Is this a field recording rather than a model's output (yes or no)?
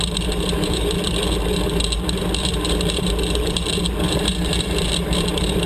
yes